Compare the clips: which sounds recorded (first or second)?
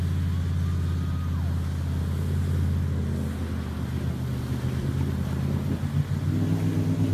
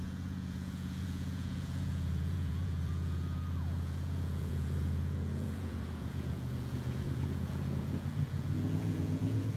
first